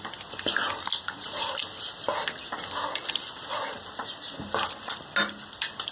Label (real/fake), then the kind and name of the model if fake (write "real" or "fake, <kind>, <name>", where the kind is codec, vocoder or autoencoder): real